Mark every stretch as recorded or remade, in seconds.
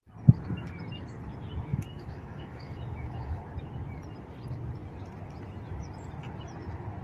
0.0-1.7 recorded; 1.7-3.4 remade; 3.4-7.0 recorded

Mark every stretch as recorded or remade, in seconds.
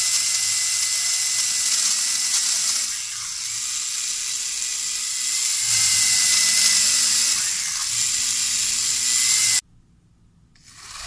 0.0-4.7 recorded; 4.7-7.2 remade; 7.2-11.1 recorded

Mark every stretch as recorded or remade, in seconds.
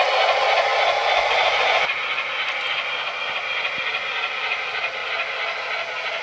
0.0-6.2 recorded